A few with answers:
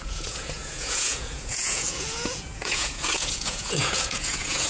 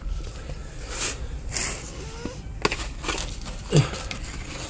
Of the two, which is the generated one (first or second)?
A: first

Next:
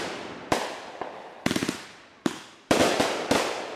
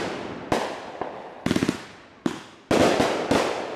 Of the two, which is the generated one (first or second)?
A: first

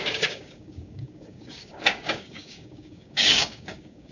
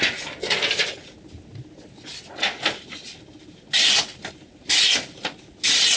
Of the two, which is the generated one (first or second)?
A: first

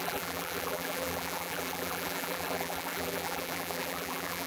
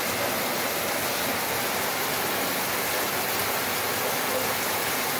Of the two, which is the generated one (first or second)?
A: first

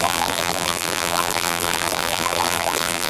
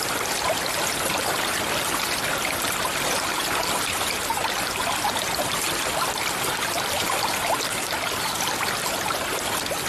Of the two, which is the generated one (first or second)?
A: first